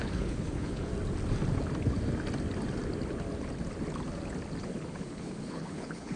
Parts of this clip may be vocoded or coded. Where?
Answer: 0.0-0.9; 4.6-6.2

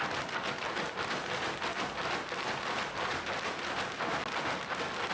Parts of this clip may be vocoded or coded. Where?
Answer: none

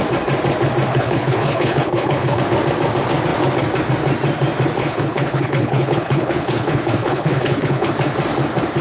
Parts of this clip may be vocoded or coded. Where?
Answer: 0.9-2.4; 4.8-7.9

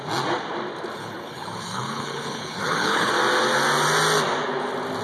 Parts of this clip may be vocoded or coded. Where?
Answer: 0.9-3.1

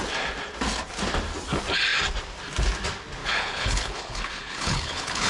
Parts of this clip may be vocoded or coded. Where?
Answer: 3.2-5.3